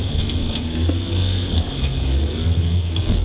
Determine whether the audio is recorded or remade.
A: remade